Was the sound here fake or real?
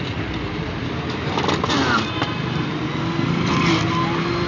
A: real